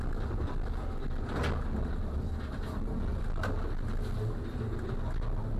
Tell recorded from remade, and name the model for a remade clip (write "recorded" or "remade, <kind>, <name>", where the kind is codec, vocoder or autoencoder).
recorded